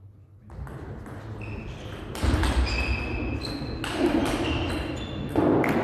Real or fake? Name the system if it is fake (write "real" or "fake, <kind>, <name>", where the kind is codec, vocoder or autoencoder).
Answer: real